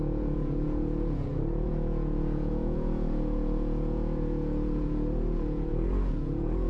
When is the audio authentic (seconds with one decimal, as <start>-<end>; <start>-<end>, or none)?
none